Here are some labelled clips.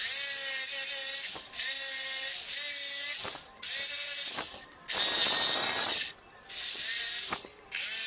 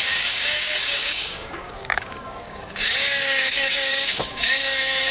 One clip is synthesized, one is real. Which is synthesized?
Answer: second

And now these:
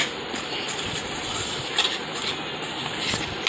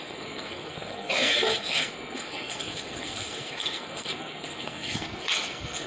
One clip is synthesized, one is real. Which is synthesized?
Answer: second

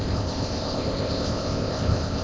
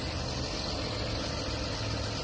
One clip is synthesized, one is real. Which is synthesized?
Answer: first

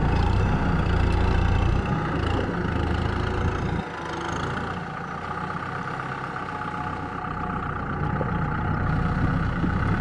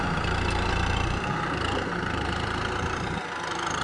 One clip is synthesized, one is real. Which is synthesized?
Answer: second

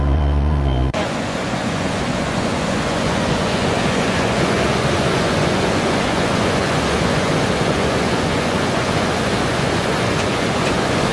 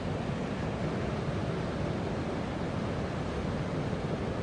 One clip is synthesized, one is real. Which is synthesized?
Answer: first